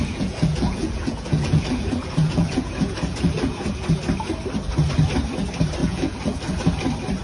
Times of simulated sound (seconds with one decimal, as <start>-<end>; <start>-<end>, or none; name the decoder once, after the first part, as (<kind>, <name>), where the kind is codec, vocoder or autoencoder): 0.0-4.0 (vocoder, Vocos); 5.8-6.6